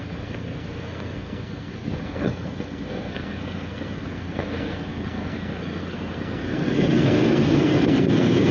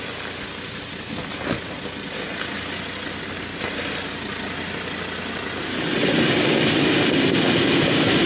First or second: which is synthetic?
first